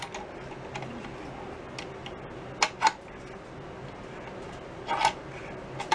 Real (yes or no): yes